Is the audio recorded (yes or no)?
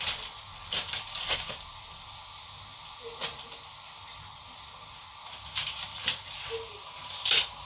yes